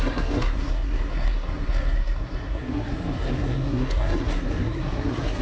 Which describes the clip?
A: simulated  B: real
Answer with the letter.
A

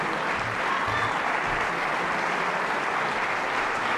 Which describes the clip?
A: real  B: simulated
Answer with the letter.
A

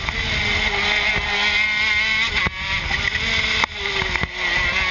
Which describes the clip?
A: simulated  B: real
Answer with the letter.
B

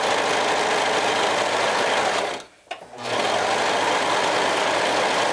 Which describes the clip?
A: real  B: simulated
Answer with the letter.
A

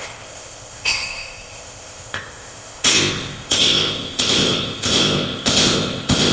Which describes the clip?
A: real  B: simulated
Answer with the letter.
B